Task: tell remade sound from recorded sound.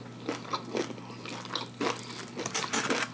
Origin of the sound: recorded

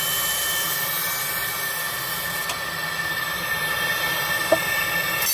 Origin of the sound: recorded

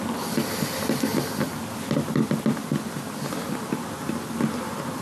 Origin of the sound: recorded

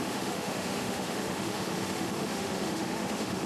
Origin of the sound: remade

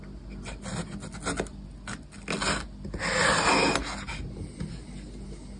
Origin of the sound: recorded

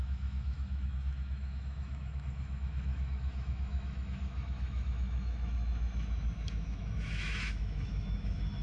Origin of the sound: remade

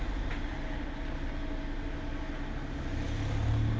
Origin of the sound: recorded